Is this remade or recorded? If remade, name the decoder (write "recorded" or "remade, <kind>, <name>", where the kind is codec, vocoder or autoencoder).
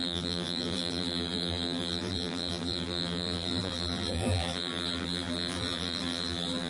remade, vocoder, BigVGAN v2